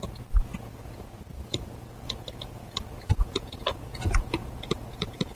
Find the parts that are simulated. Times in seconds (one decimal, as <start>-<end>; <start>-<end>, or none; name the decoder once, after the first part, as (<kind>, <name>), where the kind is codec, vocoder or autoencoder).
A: 0.0-5.4 (vocoder, Vocos)